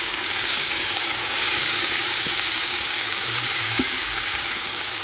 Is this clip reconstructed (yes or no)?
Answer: yes